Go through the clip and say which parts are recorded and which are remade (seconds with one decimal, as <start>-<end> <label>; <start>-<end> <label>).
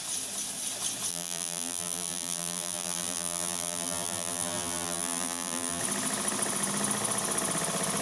0.0-1.1 recorded; 1.1-5.8 remade; 5.8-8.0 recorded